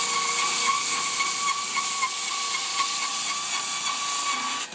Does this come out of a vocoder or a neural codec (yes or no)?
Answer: no